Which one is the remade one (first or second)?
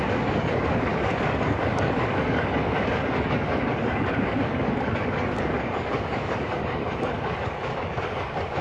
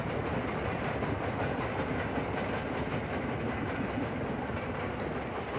first